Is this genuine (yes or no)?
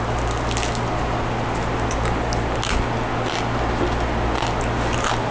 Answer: yes